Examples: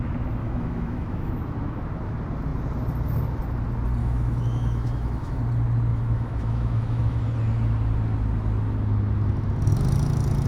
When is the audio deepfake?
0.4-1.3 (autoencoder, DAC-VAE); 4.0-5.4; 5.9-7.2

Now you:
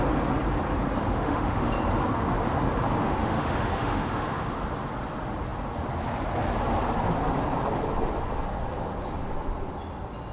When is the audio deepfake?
1.0-1.7 (autoencoder, DAC-VAE); 3.0-4.6

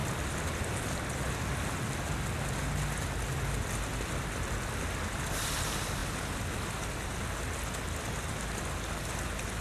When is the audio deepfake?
none

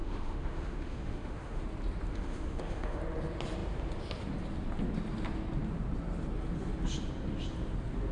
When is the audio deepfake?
0.0-1.6 (autoencoder, DAC-VAE); 2.1-3.0